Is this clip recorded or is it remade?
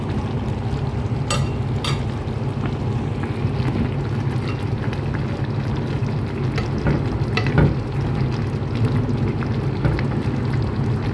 recorded